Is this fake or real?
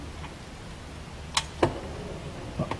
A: real